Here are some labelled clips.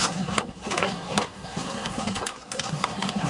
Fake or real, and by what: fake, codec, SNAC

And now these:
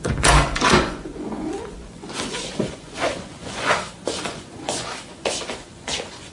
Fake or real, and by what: fake, vocoder, Vocos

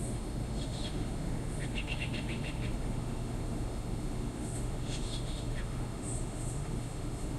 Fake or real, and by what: fake, autoencoder, DAC-VAE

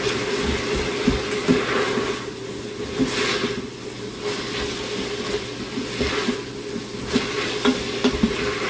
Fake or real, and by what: real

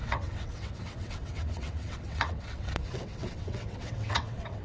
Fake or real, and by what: fake, vocoder, WaveNeXt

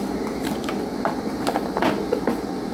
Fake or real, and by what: fake, vocoder, BigVGAN v2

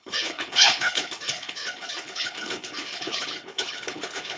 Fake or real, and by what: fake, codec, HILCodec